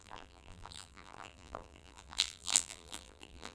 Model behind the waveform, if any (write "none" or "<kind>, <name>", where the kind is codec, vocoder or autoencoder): vocoder, BigVGAN v2